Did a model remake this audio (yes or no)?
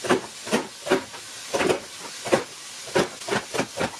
no